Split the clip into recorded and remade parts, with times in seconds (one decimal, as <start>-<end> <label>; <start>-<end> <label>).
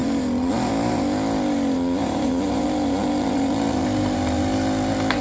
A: 0.0-0.5 remade; 0.5-2.0 recorded; 2.0-4.2 remade; 4.2-5.2 recorded